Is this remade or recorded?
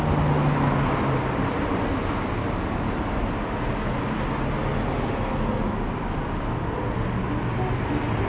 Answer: recorded